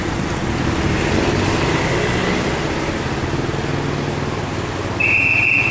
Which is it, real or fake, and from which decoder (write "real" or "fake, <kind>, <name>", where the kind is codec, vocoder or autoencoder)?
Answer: real